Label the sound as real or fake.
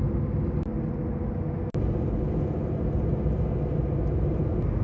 real